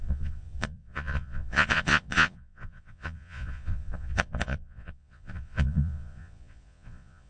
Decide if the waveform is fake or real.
fake